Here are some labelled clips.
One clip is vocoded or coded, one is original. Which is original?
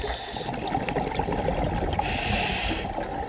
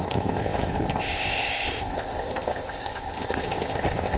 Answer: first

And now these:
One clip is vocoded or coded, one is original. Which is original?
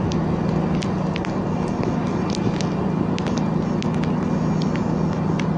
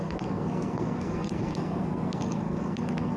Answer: first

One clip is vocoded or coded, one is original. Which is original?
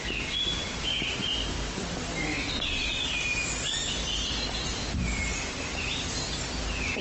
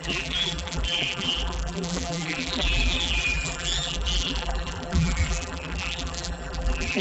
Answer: first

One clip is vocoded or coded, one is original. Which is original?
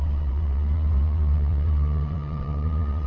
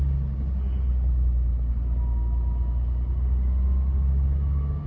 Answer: second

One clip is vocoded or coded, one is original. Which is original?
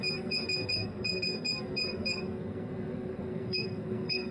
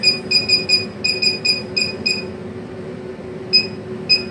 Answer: second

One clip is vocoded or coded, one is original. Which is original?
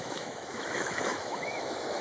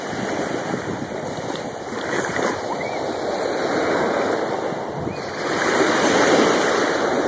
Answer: second